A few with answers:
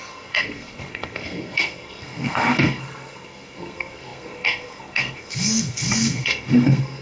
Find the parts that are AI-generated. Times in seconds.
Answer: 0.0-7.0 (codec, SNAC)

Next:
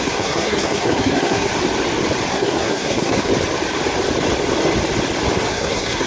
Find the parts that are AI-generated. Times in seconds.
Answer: 0.0-1.5 (codec, SNAC); 2.3-3.3; 5.5-6.1

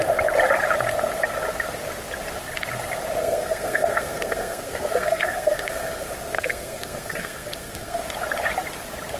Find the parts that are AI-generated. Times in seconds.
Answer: 3.2-8.0 (codec, SNAC)

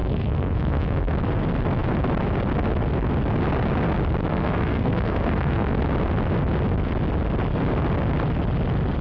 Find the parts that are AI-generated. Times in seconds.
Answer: 0.0-1.1 (codec, SNAC); 4.2-5.8

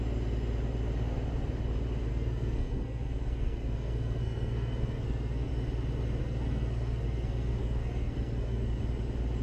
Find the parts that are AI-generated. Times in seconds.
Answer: 2.1-5.5 (codec, SNAC); 6.2-8.8

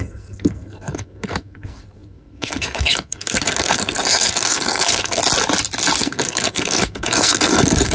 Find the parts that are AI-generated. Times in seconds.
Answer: 0.0-5.2 (codec, SNAC); 6.0-7.9

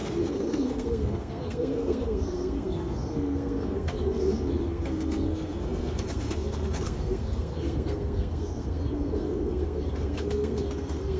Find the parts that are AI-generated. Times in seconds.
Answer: 0.0-11.2 (codec, SNAC)

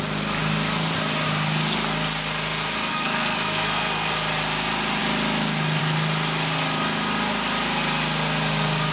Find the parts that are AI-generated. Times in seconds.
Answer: 2.9-4.1 (codec, SNAC)